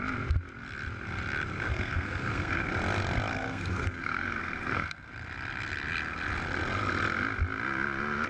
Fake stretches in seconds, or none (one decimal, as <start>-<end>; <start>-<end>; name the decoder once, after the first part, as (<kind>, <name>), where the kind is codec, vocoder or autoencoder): 1.7-2.7 (codec, SNAC); 3.3-5.1